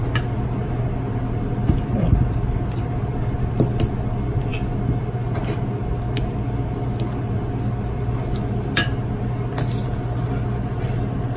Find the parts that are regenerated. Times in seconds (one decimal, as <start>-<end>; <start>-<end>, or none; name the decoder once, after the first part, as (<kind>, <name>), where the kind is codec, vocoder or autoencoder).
none